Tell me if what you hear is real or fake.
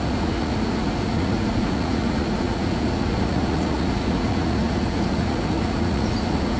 fake